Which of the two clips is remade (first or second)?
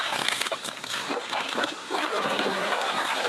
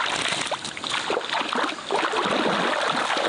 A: first